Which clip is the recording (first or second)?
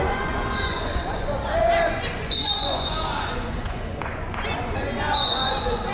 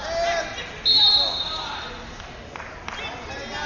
second